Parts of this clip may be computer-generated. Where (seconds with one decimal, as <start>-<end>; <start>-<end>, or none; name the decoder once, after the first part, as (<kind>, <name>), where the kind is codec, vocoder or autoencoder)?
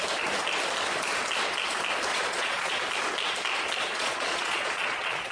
2.1-2.7 (vocoder, Vocos); 3.9-5.3